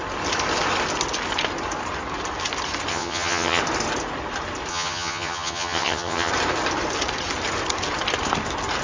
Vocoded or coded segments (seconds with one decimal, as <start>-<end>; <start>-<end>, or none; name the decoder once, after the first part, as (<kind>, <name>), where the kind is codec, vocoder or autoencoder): 2.9-3.6 (vocoder, HiFi-GAN); 4.7-6.3